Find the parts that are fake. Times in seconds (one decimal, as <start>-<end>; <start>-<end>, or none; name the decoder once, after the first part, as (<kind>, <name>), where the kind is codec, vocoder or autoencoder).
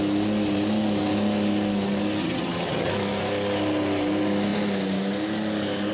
2.2-2.9 (vocoder, HiFi-GAN)